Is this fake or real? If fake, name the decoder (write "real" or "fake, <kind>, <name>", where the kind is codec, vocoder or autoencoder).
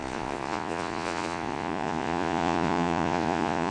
fake, vocoder, Vocos